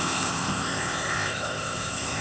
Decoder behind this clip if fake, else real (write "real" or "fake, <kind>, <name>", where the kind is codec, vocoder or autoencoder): fake, codec, ZipCodec